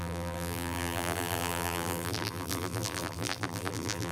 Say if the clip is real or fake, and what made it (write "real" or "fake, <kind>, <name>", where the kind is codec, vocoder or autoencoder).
fake, vocoder, BigVGAN v2